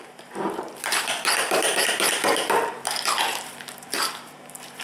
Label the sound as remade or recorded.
remade